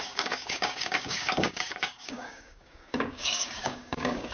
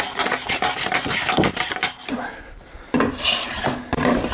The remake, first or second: first